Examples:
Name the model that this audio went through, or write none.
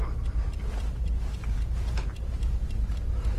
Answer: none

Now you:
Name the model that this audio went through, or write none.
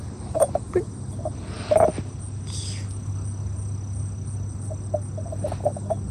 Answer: none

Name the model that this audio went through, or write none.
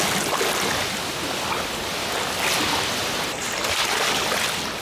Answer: none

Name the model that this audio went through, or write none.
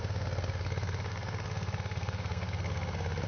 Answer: codec, SNAC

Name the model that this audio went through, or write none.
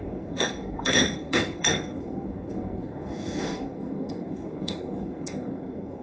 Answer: codec, SNAC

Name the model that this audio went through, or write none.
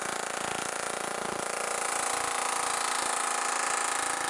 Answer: none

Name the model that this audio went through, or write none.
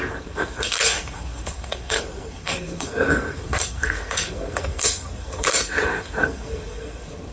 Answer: codec, SNAC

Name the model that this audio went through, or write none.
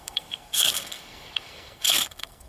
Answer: codec, SNAC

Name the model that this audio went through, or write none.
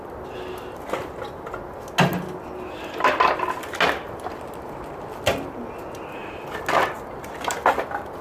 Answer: none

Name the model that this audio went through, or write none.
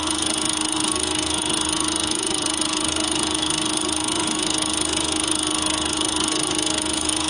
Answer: codec, SNAC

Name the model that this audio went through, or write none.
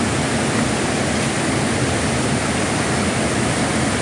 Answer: none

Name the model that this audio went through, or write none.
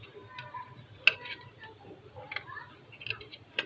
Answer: none